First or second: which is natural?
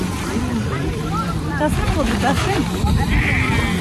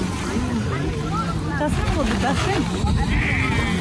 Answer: second